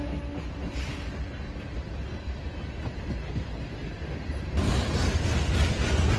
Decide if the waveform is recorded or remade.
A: recorded